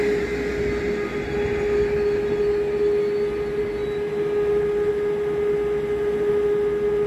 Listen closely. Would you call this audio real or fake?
real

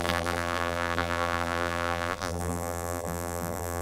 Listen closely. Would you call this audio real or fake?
fake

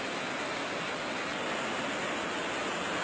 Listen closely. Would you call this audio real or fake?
real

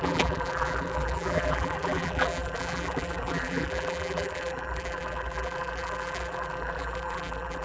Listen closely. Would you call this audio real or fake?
fake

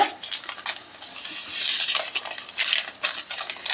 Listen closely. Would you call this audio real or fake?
real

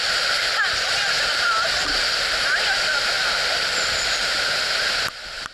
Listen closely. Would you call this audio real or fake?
fake